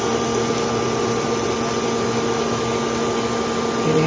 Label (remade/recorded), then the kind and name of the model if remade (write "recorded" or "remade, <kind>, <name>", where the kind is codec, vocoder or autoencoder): recorded